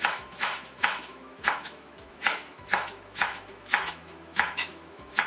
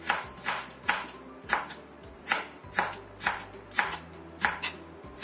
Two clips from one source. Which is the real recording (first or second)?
second